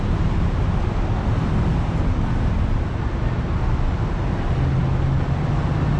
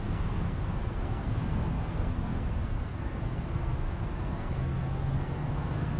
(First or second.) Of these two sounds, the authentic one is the first